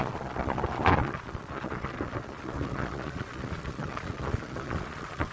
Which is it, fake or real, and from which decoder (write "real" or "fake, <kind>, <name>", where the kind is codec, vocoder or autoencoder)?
fake, vocoder, Vocos